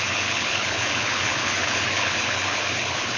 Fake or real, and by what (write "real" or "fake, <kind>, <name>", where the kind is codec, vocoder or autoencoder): fake, codec, HILCodec